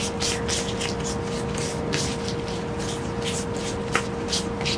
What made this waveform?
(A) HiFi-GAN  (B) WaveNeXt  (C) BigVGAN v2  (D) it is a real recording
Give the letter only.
D